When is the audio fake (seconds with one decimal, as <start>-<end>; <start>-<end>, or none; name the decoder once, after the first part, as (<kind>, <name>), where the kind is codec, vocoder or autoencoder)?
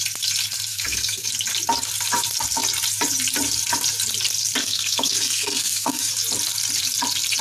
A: 0.7-1.3 (codec, SNAC); 4.6-6.1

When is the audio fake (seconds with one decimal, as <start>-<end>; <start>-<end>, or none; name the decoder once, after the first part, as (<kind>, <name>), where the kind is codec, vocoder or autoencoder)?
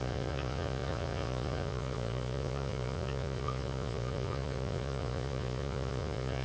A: 0.0-6.4 (vocoder, Vocos)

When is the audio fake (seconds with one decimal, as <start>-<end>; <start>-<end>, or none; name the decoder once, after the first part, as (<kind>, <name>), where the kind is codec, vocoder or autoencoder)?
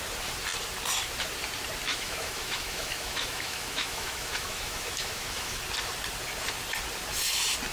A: 1.9-5.6 (autoencoder, DAC-VAE)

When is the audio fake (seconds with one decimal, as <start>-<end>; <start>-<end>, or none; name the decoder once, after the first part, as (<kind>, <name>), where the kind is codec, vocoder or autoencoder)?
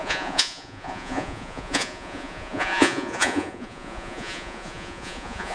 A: 0.0-5.5 (vocoder, Vocos)